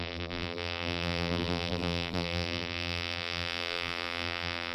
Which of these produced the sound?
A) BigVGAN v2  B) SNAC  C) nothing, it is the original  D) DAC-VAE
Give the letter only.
A